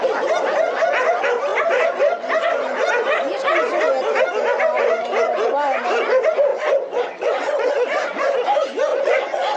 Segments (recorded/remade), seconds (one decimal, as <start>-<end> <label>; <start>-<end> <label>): 0.0-6.5 recorded; 6.5-7.7 remade; 7.7-8.9 recorded; 8.9-9.6 remade